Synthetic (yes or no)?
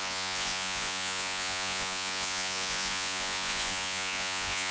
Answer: yes